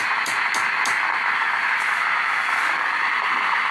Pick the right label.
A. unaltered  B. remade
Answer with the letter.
A